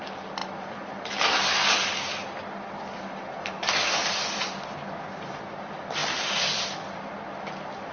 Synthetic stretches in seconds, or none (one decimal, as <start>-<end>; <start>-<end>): none